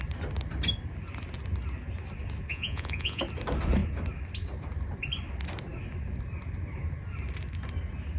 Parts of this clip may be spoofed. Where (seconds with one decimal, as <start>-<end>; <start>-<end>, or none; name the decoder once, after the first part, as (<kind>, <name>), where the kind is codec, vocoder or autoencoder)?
2.5-3.2 (vocoder, Vocos)